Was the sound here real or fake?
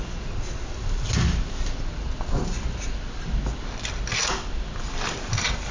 real